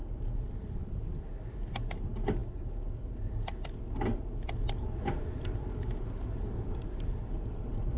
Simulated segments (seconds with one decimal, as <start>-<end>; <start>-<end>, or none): none